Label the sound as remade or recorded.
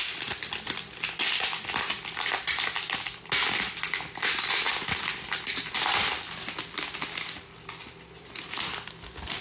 recorded